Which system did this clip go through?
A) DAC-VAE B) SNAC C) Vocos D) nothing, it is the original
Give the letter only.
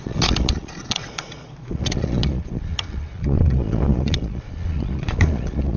C